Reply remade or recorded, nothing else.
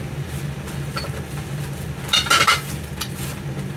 recorded